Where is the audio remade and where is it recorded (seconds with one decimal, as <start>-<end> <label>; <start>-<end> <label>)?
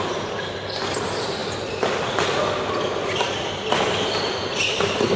0.0-5.2 recorded